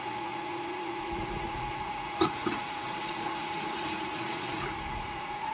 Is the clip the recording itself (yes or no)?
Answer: no